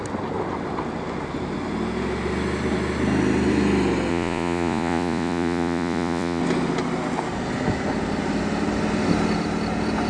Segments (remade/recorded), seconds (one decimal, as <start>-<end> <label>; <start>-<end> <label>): 0.0-4.1 recorded; 4.1-6.4 remade; 6.4-10.1 recorded